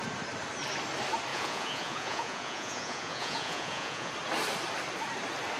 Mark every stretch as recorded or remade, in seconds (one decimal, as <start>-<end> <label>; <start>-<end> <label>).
0.0-1.3 recorded; 1.3-4.1 remade; 4.1-5.6 recorded